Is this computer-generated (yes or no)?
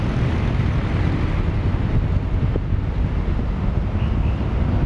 no